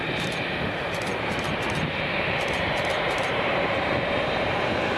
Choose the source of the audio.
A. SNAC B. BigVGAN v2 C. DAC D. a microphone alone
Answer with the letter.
B